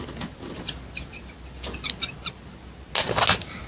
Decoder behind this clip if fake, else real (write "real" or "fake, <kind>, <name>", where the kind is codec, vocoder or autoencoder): real